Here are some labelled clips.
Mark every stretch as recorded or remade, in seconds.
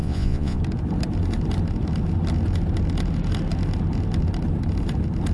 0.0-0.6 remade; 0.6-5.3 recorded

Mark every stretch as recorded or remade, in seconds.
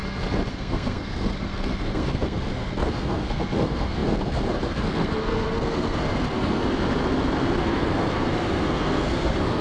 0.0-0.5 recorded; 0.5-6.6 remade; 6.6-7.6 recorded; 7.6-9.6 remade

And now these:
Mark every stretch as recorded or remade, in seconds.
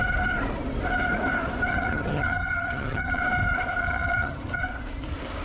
0.0-1.7 recorded; 1.7-3.2 remade; 3.2-3.8 recorded; 3.8-4.6 remade; 4.6-5.4 recorded